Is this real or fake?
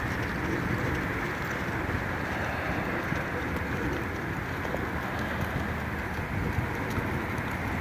real